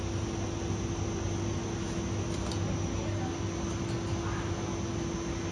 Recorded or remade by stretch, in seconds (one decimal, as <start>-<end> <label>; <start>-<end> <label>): 0.0-5.5 recorded